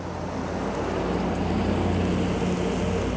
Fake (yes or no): no